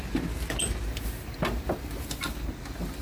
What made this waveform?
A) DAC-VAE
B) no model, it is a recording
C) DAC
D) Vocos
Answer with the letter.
B